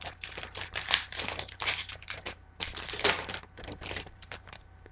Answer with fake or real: fake